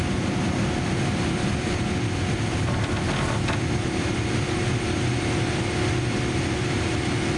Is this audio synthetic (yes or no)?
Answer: no